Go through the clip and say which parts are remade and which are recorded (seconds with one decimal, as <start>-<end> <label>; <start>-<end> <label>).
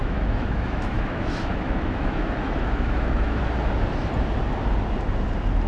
0.0-3.4 remade; 3.4-5.7 recorded